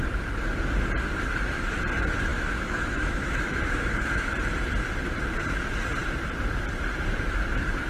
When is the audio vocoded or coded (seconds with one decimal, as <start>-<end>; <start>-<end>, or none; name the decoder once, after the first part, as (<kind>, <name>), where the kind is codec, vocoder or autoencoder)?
2.3-4.3 (autoencoder, DAC-VAE)